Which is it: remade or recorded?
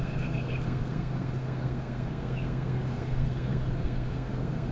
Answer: remade